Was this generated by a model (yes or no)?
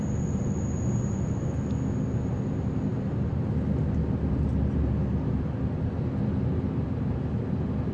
no